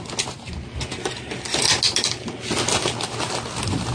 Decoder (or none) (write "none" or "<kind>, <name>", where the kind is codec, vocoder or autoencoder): none